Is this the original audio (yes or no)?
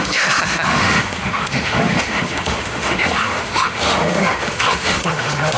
no